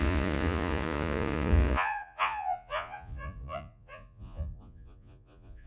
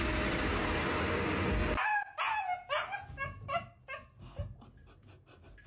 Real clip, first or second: second